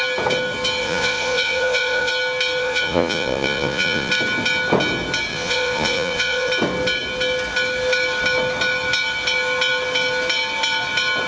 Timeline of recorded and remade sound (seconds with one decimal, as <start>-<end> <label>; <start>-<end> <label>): 0.0-0.8 recorded; 0.8-2.1 remade; 2.1-2.6 recorded; 2.6-4.1 remade; 4.1-5.3 recorded; 5.3-6.5 remade; 6.5-11.3 recorded